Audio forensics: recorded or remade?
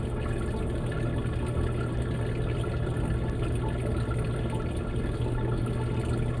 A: recorded